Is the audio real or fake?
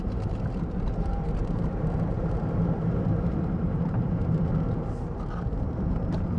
fake